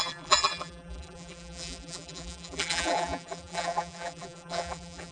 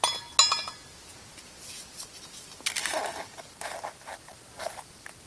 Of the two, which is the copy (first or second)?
first